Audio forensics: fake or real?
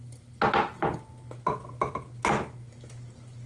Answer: real